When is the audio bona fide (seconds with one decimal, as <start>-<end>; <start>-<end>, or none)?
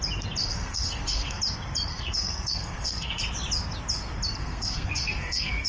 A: 0.0-0.4; 1.4-1.9; 3.2-4.4